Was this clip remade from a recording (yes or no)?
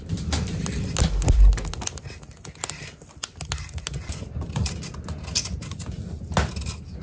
no